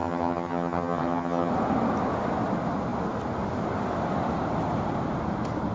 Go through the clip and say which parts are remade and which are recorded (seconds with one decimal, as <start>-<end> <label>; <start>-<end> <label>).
0.0-1.5 remade; 1.5-5.7 recorded